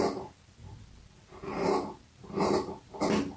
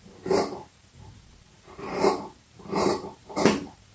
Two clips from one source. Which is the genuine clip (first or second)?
first